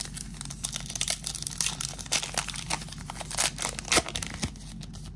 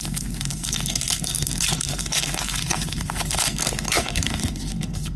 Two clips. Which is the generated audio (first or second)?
second